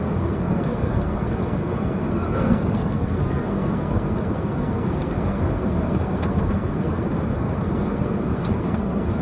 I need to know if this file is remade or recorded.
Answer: remade